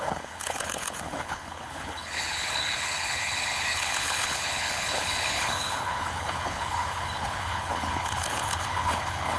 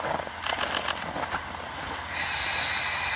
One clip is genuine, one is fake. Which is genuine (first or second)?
second